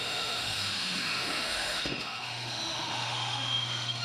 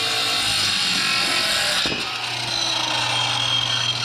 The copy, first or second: first